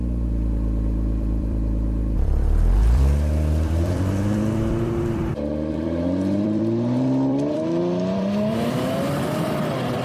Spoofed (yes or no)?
yes